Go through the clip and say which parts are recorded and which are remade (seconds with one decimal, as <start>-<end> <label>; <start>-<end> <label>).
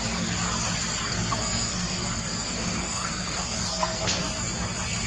0.0-1.1 recorded; 1.1-4.2 remade; 4.2-5.1 recorded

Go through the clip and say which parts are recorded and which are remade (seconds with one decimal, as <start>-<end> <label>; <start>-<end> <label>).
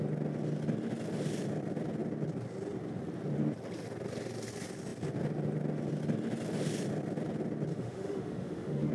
0.0-7.7 recorded; 7.7-8.9 remade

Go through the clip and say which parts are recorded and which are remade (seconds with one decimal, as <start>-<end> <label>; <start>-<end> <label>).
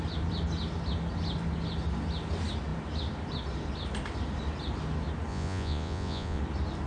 0.0-5.3 recorded; 5.3-6.4 remade; 6.4-6.9 recorded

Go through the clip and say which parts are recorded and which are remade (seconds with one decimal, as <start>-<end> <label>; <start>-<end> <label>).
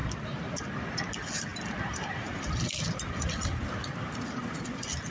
0.0-5.1 recorded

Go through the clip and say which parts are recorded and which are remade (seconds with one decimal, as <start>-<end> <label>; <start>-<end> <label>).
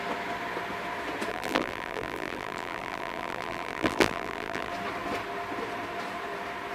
0.0-1.3 recorded; 1.3-4.7 remade; 4.7-6.7 recorded